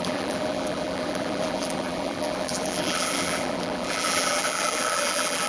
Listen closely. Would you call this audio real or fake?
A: fake